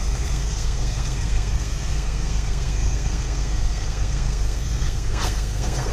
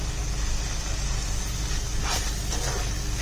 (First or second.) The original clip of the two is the second